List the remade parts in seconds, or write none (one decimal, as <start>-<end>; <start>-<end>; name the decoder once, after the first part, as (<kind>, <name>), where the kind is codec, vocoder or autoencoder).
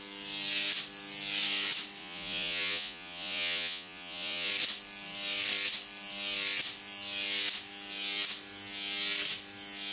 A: 2.0-4.5 (vocoder, Vocos)